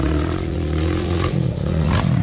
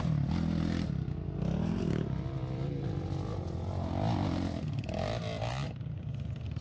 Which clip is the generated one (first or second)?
first